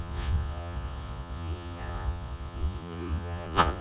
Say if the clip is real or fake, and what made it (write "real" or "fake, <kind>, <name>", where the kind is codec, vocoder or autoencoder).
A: fake, vocoder, Vocos